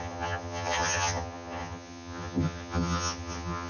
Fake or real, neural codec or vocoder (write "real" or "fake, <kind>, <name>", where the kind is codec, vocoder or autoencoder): fake, vocoder, HiFi-GAN